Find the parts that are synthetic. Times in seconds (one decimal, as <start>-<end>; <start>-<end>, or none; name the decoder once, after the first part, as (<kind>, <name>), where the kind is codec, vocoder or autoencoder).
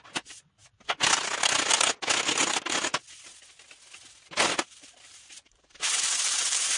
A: 0.0-0.6 (vocoder, BigVGAN v2); 4.7-6.8